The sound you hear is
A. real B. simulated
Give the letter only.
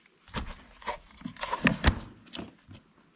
A